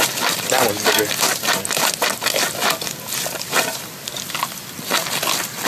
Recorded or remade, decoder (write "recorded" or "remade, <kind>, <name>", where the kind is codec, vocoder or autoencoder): recorded